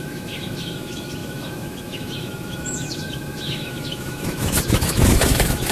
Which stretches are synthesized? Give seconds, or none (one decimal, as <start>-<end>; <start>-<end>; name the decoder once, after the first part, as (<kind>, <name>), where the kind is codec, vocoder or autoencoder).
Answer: 0.0-5.7 (autoencoder, DAC-VAE)